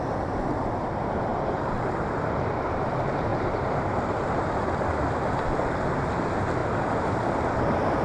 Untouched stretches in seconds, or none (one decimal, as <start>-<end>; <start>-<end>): 0.0-1.3; 2.9-3.3; 4.5-8.0